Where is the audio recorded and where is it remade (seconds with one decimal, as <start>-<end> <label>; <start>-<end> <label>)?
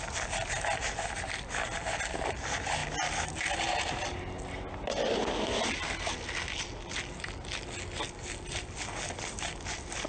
0.0-10.1 recorded